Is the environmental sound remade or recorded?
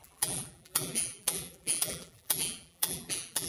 remade